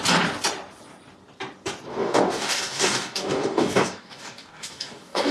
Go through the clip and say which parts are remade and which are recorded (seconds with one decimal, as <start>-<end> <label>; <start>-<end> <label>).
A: 0.0-1.9 recorded; 1.9-5.3 remade